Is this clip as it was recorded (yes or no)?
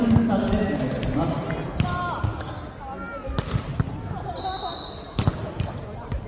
yes